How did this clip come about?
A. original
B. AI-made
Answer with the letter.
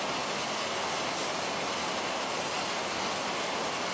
A